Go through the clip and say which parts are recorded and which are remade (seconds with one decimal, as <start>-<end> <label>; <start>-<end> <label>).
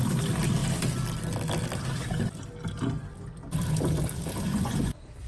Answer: 0.0-4.5 recorded; 4.5-5.3 remade